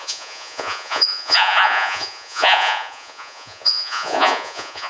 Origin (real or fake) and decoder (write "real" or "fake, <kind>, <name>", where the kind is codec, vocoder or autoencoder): fake, vocoder, Vocos